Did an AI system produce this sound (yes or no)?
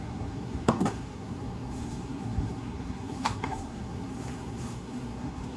yes